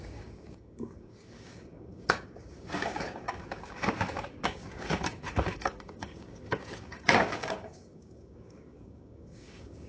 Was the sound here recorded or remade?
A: remade